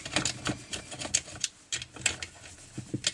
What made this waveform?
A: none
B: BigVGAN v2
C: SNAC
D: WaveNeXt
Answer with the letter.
A